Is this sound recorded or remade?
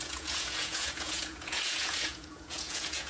remade